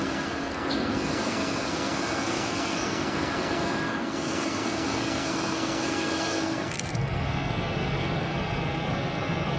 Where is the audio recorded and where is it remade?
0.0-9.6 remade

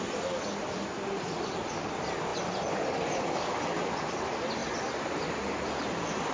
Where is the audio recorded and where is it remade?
0.0-6.3 recorded